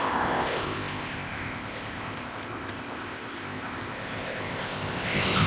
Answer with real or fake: fake